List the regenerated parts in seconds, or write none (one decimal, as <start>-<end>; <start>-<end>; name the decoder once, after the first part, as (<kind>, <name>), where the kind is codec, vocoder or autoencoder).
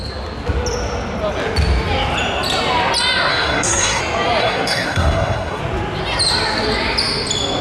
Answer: 3.3-4.0 (codec, SNAC); 4.4-5.6